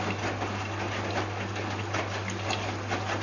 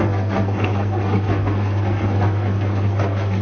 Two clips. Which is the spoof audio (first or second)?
second